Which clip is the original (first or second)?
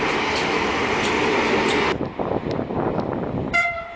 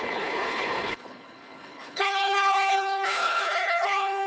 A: first